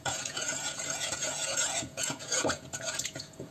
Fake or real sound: fake